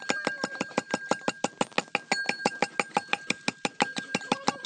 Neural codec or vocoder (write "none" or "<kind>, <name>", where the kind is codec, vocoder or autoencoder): none